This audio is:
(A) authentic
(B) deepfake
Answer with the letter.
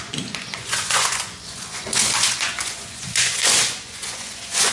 B